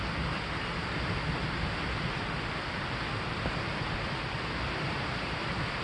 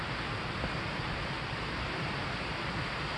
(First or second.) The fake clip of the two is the first